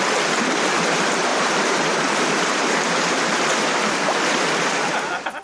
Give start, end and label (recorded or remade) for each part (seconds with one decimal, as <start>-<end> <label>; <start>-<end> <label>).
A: 0.0-1.3 recorded; 1.3-3.1 remade; 3.1-5.4 recorded